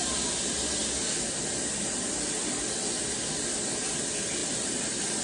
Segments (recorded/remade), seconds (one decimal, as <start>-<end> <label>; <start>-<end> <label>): 0.0-4.4 recorded; 4.4-5.2 remade